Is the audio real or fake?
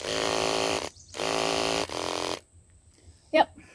fake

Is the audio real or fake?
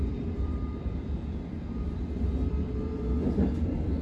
fake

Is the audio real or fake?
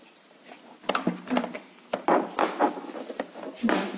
real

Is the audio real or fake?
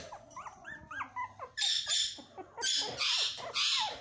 real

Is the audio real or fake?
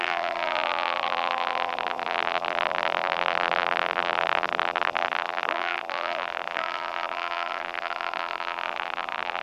fake